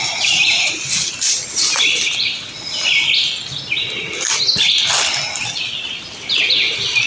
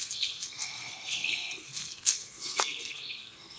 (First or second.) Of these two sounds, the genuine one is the first